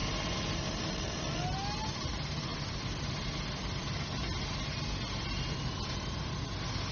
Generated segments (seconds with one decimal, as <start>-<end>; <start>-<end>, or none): none